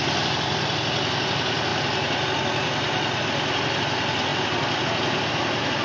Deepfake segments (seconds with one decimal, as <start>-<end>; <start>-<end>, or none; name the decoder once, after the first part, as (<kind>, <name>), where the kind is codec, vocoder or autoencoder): none